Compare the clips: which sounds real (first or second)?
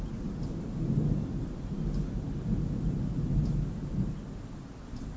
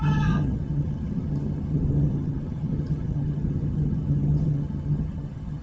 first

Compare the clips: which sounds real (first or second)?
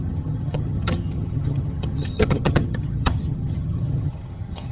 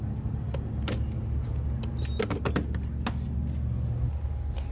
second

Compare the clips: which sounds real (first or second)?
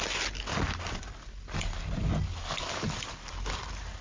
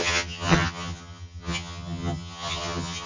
first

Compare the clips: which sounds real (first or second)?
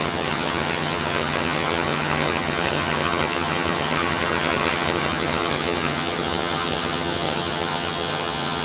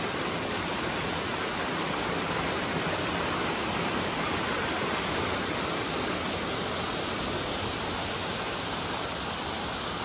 second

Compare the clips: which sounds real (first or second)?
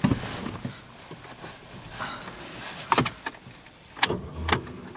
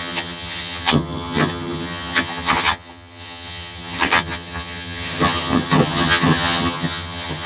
first